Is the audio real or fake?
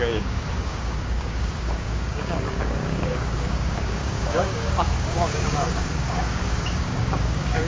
fake